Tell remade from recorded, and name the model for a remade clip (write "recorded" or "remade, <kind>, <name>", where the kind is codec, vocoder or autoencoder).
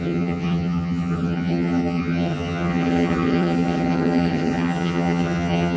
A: remade, vocoder, HiFi-GAN